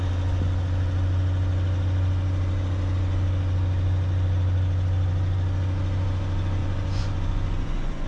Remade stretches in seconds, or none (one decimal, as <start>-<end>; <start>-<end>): 6.6-8.1